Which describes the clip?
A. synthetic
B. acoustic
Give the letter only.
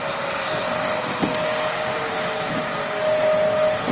B